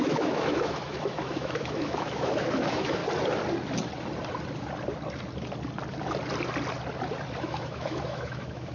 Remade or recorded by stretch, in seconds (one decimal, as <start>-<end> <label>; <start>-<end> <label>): 0.0-3.0 remade; 3.0-7.4 recorded; 7.4-8.7 remade